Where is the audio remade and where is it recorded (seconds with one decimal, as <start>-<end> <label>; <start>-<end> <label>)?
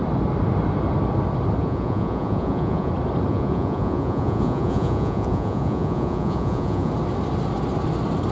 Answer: 0.0-1.6 recorded; 1.6-2.9 remade; 2.9-3.3 recorded; 3.3-6.9 remade; 6.9-8.3 recorded